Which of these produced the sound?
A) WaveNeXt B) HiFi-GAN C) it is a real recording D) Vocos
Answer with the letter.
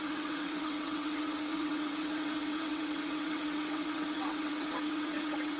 A